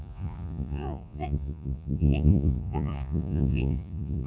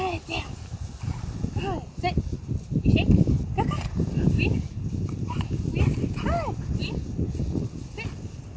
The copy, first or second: first